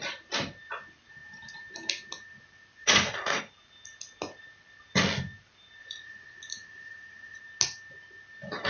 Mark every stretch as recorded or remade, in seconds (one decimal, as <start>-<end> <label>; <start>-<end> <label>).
0.0-2.8 recorded; 2.8-3.4 remade; 3.4-5.8 recorded; 5.8-7.4 remade; 7.4-8.7 recorded